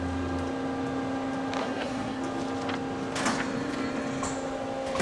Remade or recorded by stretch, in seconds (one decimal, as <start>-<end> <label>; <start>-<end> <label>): 0.0-1.6 recorded; 1.6-2.2 remade; 2.2-5.0 recorded